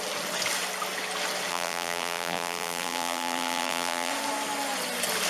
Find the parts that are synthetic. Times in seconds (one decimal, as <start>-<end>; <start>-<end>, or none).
1.5-4.1